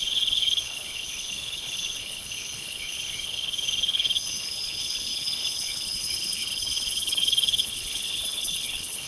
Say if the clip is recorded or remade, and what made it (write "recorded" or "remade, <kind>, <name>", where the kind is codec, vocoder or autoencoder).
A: remade, codec, HILCodec